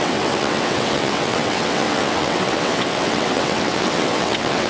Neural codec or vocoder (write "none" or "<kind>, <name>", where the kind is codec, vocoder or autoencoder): vocoder, WaveNeXt